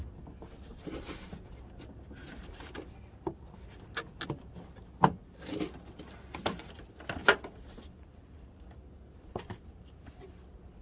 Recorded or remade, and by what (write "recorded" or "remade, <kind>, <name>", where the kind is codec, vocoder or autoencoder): recorded